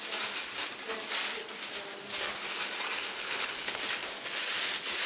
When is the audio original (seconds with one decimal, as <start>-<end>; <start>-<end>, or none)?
0.0-3.1; 3.8-5.1